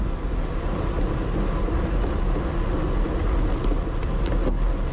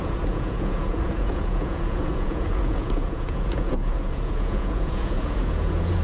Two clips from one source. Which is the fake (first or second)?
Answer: second